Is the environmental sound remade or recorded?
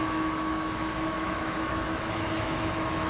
remade